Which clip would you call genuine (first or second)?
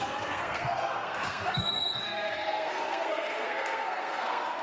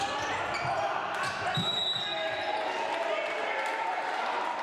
second